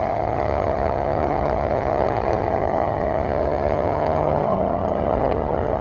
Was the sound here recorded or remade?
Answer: remade